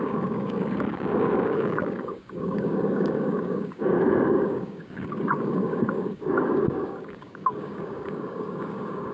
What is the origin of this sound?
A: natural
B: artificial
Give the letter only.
B